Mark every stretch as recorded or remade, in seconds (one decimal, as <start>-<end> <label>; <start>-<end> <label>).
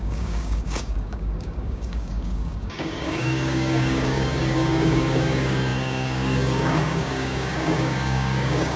0.0-8.8 remade